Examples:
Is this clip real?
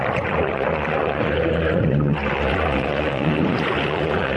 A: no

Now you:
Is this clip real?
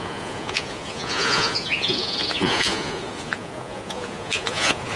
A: no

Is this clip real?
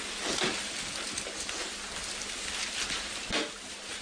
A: yes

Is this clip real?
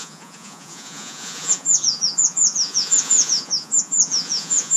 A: no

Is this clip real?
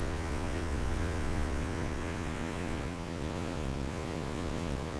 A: no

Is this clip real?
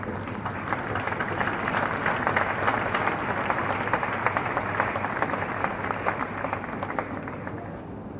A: yes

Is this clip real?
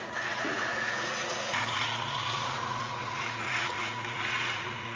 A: no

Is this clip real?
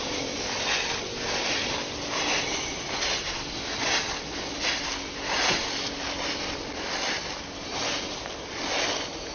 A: yes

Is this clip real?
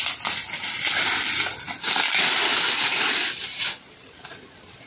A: yes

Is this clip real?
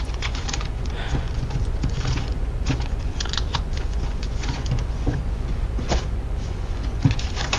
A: no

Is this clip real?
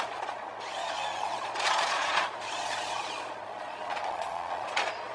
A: no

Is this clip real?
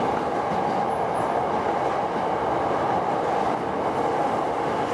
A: yes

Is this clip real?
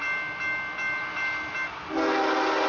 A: yes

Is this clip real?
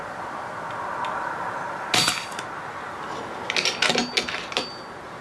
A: yes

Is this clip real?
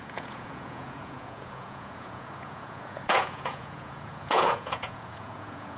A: no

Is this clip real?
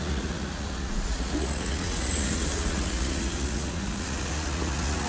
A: no